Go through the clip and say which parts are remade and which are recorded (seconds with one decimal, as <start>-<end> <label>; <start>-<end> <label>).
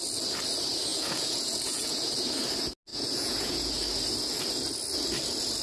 0.0-0.9 recorded; 0.9-2.1 remade; 2.1-2.9 recorded; 2.9-3.7 remade; 3.7-5.6 recorded